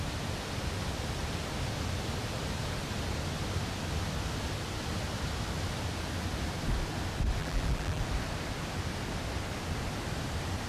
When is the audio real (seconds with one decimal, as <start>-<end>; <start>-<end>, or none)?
0.0-7.4; 8.0-10.7